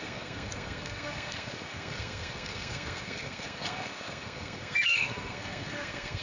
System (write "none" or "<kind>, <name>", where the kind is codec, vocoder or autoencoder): codec, SNAC